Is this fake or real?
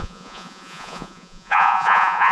fake